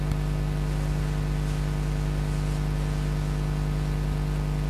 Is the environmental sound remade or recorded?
recorded